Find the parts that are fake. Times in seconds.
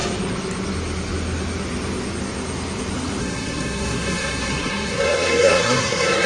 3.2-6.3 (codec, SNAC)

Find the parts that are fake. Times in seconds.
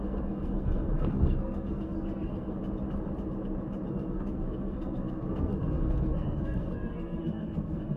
0.0-2.6 (codec, SNAC); 3.9-8.0